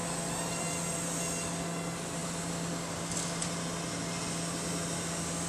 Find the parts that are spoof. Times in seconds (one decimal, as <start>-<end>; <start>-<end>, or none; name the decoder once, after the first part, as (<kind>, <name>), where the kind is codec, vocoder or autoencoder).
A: none